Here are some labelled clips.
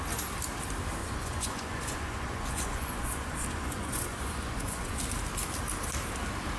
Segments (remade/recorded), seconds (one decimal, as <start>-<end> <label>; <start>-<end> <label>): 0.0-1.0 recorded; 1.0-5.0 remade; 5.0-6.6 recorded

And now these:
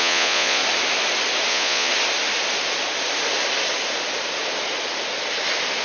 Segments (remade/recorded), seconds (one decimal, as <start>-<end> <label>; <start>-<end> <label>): 0.0-0.6 remade; 0.6-1.5 recorded; 1.5-1.9 remade; 1.9-5.8 recorded

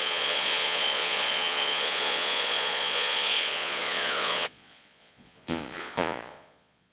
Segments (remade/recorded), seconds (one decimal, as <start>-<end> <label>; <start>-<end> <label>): 0.0-6.9 remade